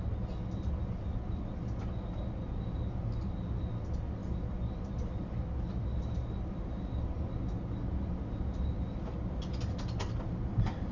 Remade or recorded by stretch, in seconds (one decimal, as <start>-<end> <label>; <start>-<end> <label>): 0.0-10.9 recorded